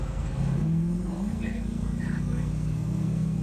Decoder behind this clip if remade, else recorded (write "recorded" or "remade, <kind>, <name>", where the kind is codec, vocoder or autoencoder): remade, codec, SNAC